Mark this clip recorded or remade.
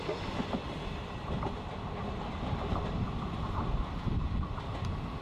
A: recorded